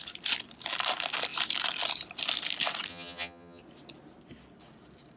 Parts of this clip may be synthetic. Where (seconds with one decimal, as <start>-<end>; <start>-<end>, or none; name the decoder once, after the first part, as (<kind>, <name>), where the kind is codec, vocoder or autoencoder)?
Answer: 2.9-3.6 (vocoder, HiFi-GAN)